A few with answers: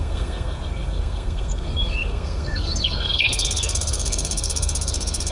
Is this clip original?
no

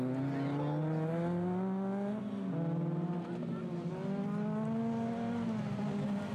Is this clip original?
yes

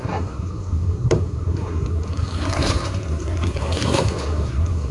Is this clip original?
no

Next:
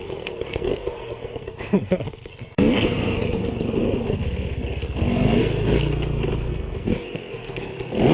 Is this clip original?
no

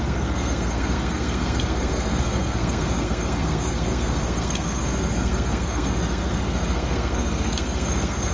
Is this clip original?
no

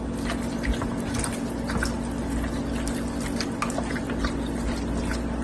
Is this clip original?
yes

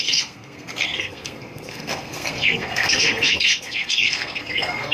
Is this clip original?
no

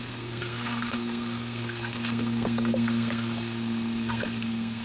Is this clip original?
no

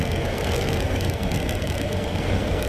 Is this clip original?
no